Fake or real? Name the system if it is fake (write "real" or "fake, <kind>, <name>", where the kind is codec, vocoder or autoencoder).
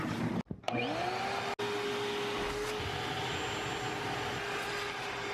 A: real